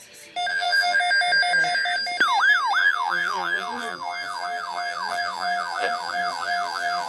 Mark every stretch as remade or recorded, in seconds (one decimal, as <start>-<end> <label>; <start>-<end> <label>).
0.0-0.5 recorded; 0.5-1.0 remade; 1.0-2.8 recorded; 2.8-7.1 remade